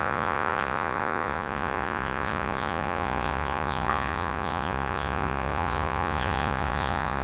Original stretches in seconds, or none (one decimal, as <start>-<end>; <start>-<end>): none